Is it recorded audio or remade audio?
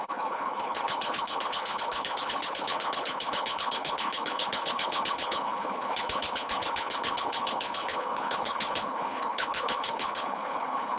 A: remade